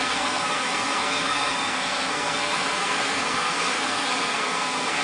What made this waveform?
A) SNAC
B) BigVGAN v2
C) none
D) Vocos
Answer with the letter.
A